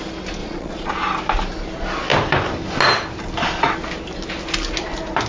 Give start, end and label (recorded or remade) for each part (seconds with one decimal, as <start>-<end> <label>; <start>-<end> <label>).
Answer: 0.0-0.4 recorded; 0.4-0.9 remade; 0.9-5.3 recorded